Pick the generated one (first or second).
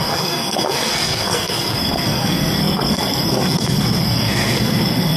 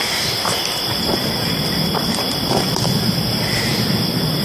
first